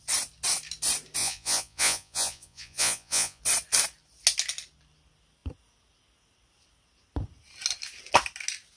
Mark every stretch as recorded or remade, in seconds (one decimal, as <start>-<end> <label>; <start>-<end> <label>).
0.0-1.2 recorded; 1.2-3.4 remade; 3.4-8.8 recorded